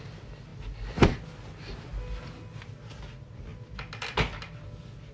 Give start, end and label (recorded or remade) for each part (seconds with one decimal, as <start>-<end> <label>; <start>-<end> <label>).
0.0-5.1 recorded